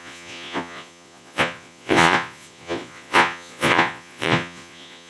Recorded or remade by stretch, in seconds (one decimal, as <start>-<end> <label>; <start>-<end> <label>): 0.0-5.1 remade